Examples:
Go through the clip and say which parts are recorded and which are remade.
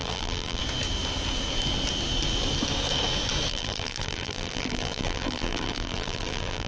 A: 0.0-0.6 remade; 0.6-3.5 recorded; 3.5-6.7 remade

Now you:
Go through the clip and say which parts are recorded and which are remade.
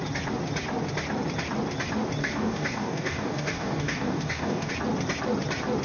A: 0.0-2.2 recorded; 2.2-4.7 remade; 4.7-5.8 recorded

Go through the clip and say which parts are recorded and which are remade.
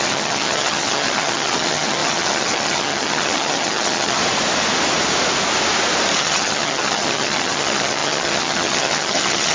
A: 0.0-4.2 remade; 4.2-6.2 recorded; 6.2-9.5 remade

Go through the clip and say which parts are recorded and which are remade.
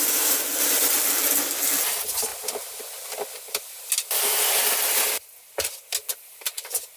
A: 0.0-2.3 recorded; 2.3-2.8 remade; 2.8-7.0 recorded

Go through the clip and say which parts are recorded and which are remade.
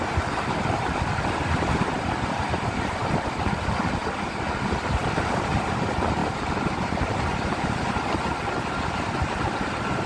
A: 0.0-10.1 recorded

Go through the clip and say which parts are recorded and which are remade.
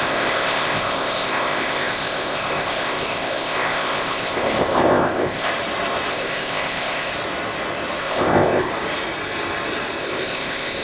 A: 0.0-5.5 remade; 5.5-6.1 recorded; 6.1-7.1 remade; 7.1-8.0 recorded; 8.0-8.7 remade; 8.7-10.0 recorded; 10.0-10.8 remade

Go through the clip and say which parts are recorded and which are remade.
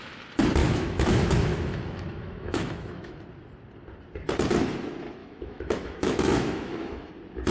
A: 0.0-0.6 recorded; 0.6-3.2 remade; 3.2-5.2 recorded; 5.2-7.1 remade; 7.1-7.5 recorded